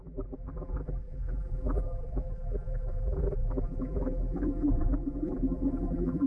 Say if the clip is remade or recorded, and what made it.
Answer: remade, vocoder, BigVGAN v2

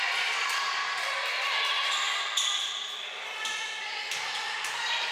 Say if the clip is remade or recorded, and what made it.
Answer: remade, vocoder, BigVGAN v2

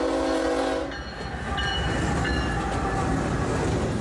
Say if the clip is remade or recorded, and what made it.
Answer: recorded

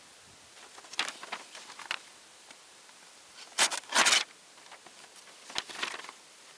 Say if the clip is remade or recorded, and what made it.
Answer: recorded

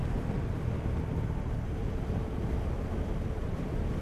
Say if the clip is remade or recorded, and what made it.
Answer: recorded